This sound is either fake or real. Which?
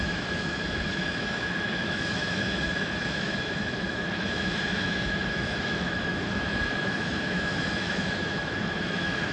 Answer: fake